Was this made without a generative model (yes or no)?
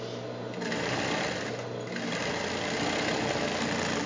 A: no